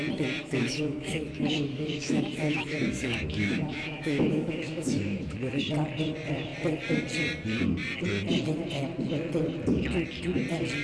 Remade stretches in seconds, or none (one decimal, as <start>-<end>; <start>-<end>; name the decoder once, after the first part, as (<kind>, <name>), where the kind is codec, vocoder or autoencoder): 0.4-5.6 (autoencoder, DAC-VAE)